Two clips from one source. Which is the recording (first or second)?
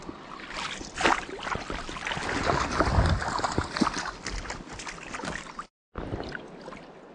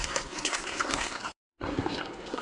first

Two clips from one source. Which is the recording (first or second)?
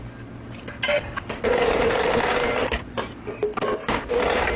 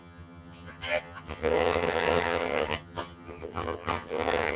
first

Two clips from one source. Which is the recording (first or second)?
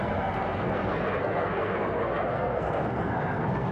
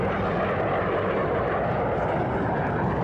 second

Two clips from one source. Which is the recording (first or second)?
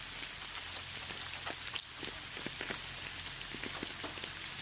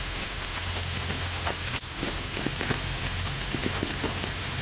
first